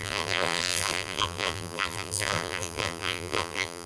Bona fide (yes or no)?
no